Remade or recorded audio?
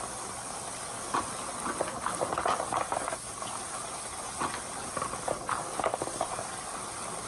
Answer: recorded